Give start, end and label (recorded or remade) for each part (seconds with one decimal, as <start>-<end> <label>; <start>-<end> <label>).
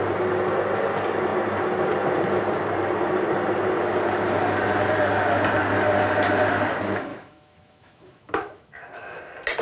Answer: 0.0-7.1 recorded; 7.1-9.2 remade; 9.2-9.6 recorded